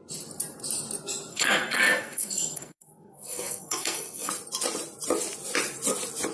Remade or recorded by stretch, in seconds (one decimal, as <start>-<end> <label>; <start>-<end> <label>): 0.0-1.3 recorded; 1.3-4.3 remade; 4.3-6.3 recorded